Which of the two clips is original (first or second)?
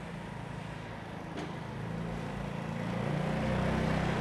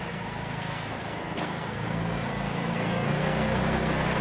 first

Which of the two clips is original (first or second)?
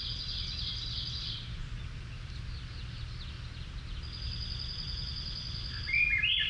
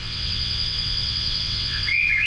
first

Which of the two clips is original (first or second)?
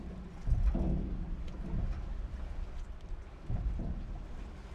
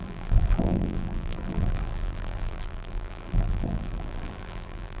first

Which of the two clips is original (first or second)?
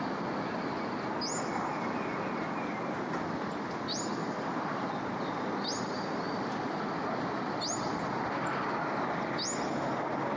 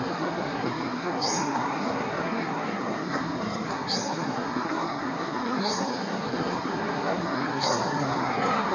first